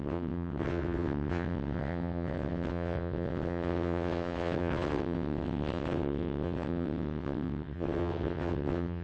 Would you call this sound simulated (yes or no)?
yes